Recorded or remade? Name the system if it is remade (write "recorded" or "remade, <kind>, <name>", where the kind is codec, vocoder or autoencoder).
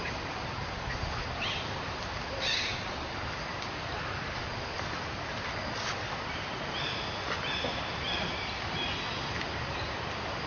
recorded